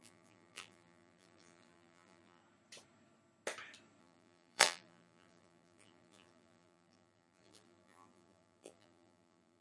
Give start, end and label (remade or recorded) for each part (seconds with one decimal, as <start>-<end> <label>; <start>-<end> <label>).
0.0-2.4 remade; 2.4-4.0 recorded; 4.0-9.6 remade